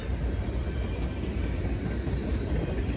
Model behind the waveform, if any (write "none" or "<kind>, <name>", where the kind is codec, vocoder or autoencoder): none